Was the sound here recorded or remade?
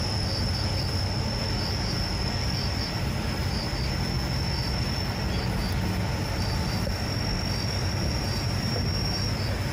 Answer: recorded